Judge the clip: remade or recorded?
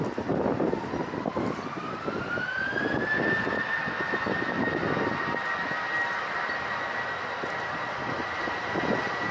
recorded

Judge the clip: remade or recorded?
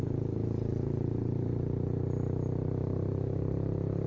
remade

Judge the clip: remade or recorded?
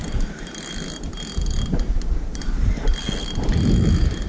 recorded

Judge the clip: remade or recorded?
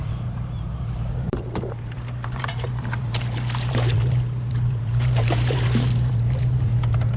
remade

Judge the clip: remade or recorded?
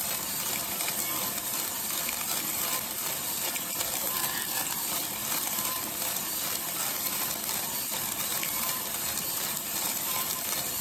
remade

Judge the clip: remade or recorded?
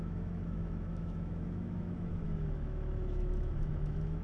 remade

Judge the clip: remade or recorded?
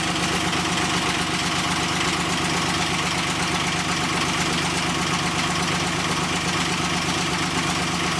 recorded